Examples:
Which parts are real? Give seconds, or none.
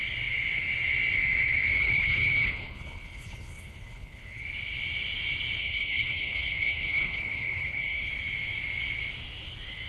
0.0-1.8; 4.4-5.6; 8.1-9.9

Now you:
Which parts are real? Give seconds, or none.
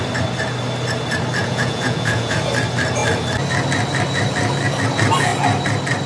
0.0-1.4; 2.4-6.1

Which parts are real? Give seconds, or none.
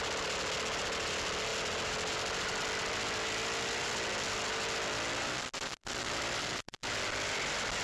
0.0-7.8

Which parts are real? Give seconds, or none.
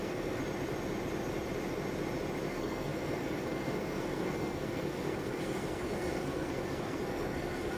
0.4-2.5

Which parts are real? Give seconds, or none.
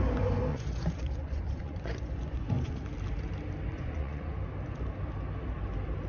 0.0-0.5; 2.8-3.7; 4.3-6.1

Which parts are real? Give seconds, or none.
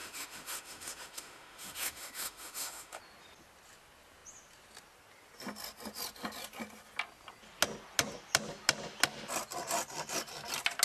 3.0-10.8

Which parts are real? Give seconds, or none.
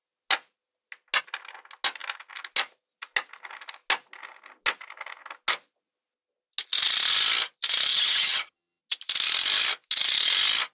0.0-7.9; 8.8-10.7